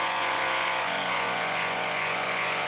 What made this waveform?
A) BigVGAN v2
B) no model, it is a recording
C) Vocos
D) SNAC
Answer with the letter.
C